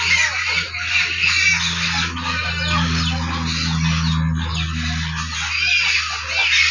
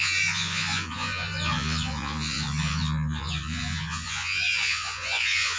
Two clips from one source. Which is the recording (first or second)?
first